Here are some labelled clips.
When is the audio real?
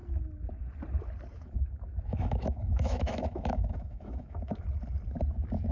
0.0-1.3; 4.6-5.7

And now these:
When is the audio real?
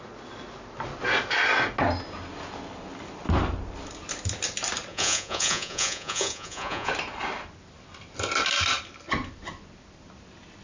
0.0-4.9; 6.9-10.6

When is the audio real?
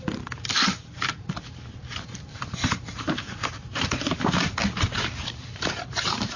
4.6-5.2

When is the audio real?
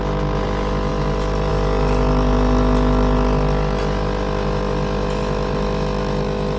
0.0-6.6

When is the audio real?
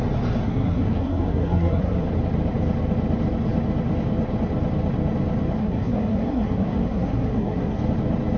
0.0-0.4; 2.1-5.6; 7.8-8.4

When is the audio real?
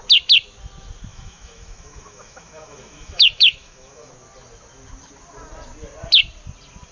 0.0-1.1; 4.1-6.9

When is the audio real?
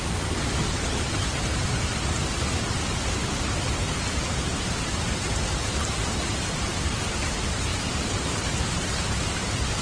0.0-7.7; 8.6-9.8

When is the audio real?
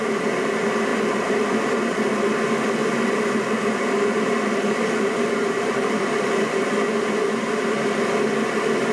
0.0-0.9; 1.5-2.8; 6.7-8.9